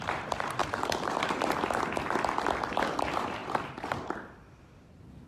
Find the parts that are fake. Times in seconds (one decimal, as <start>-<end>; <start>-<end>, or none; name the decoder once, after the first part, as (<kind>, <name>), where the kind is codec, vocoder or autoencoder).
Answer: none